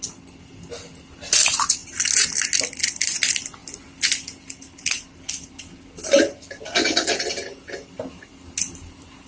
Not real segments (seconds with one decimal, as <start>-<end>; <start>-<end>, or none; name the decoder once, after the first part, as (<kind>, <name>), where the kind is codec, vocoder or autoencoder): none

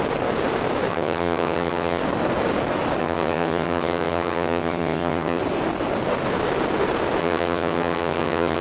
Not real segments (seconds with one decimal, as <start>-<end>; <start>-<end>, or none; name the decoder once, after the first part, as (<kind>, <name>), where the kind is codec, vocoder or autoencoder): 0.9-2.0 (vocoder, HiFi-GAN); 3.0-5.4; 7.2-8.6